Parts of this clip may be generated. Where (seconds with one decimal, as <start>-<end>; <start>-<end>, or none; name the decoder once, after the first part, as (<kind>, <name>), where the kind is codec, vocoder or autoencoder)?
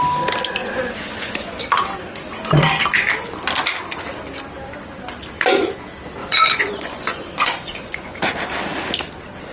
0.6-1.6 (vocoder, Vocos); 6.2-8.2